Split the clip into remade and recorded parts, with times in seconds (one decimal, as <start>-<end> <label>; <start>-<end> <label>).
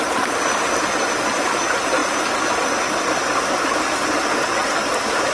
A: 0.0-5.3 recorded